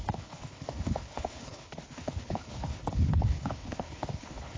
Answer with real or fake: fake